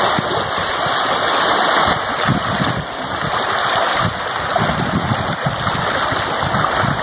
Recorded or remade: recorded